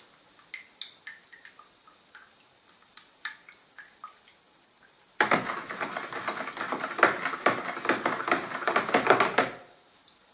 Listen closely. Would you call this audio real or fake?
real